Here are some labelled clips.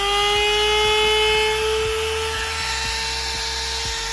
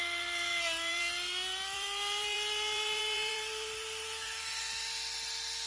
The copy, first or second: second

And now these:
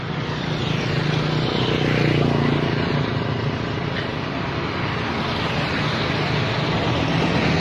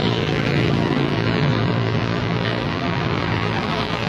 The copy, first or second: second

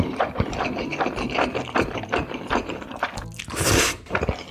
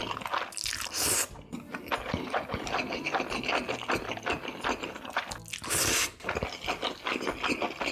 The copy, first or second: first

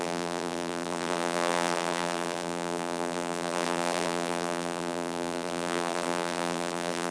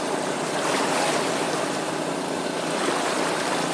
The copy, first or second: first